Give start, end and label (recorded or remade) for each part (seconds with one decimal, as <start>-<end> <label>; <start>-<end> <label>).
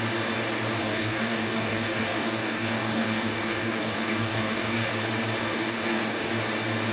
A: 0.0-0.8 recorded; 0.8-4.9 remade; 4.9-5.4 recorded; 5.4-6.3 remade; 6.3-6.9 recorded